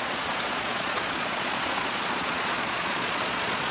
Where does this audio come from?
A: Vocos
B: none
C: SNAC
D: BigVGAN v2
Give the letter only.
A